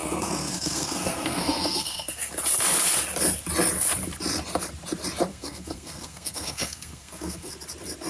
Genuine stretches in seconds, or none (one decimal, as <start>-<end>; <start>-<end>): 2.3-5.3; 7.5-8.1